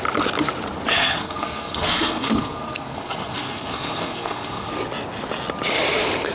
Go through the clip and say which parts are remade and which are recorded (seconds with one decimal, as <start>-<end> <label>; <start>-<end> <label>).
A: 0.0-0.9 recorded; 0.9-4.7 remade; 4.7-6.3 recorded